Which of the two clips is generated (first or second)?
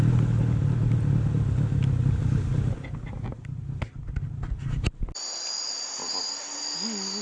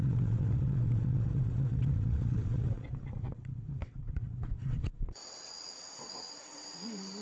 second